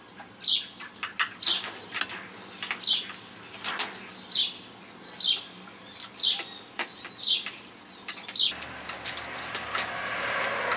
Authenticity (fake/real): real